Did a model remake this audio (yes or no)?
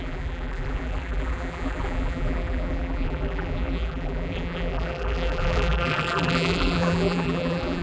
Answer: yes